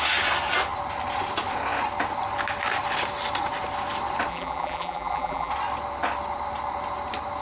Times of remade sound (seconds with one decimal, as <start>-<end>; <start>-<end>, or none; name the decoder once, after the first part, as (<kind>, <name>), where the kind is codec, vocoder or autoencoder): 4.3-5.5 (vocoder, BigVGAN v2)